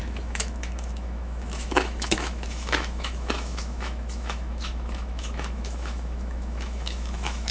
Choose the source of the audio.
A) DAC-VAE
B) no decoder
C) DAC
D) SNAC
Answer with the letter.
A